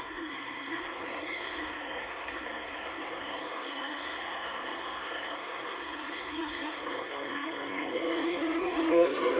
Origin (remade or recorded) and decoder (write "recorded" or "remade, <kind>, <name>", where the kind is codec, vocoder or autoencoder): remade, codec, SNAC